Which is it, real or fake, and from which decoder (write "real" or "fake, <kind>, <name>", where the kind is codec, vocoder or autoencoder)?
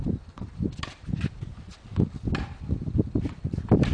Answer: real